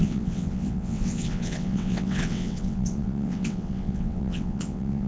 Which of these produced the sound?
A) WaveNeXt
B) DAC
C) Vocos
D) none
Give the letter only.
A